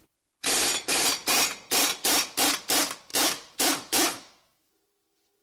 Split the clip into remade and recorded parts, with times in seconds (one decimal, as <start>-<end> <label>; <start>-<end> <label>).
0.0-3.1 recorded; 3.1-4.7 remade; 4.7-5.4 recorded